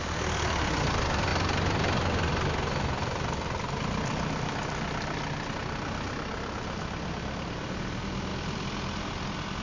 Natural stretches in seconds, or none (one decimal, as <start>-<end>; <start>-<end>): 0.0-9.6